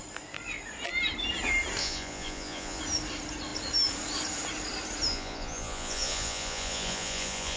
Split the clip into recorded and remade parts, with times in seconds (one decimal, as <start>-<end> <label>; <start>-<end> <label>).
0.0-1.8 recorded; 1.8-2.8 remade; 2.8-5.1 recorded; 5.1-7.6 remade